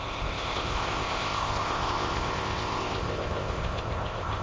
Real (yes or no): no